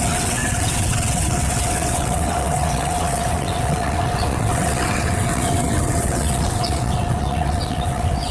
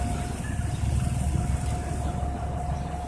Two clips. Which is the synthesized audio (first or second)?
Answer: first